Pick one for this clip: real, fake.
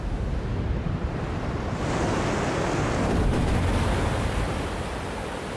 real